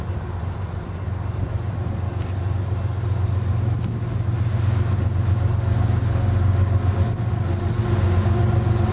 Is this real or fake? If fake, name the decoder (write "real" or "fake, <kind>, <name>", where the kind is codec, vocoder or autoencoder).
real